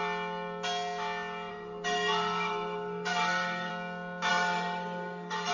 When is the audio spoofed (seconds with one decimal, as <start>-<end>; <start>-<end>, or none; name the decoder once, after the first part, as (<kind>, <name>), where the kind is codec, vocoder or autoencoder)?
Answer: 1.5-3.7 (codec, SNAC); 4.3-5.5